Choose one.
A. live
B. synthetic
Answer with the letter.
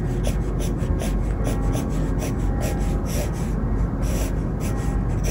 A